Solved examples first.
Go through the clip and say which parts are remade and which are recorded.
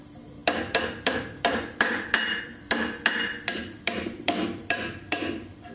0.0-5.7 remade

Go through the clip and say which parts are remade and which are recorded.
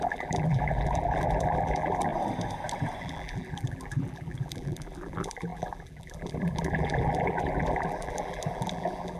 0.0-2.1 remade; 2.1-3.0 recorded; 3.0-9.2 remade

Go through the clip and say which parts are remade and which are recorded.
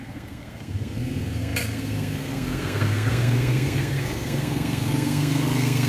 0.0-5.9 remade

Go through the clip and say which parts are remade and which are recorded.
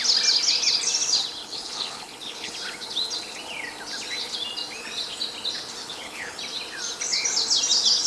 0.0-1.4 recorded; 1.4-2.5 remade; 2.5-5.8 recorded; 5.8-6.4 remade; 6.4-8.1 recorded